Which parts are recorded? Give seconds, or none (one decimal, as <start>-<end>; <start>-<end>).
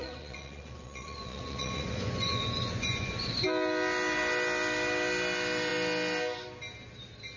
3.1-7.4